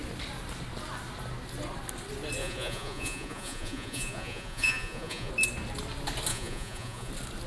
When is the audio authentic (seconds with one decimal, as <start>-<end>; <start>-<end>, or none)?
0.0-2.4; 5.3-6.3; 7.1-7.5